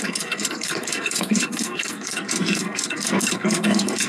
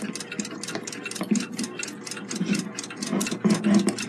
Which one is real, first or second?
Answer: second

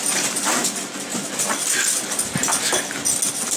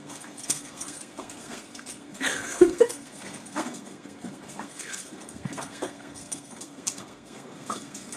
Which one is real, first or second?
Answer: first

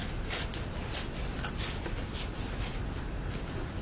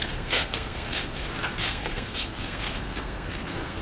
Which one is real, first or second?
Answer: first